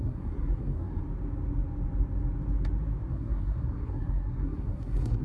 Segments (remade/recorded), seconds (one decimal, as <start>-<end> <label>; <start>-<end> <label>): 0.0-1.0 remade; 1.0-3.1 recorded; 3.1-5.2 remade